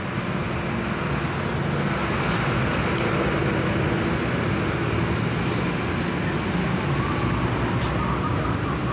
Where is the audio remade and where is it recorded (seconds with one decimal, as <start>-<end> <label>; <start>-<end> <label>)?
0.0-8.9 recorded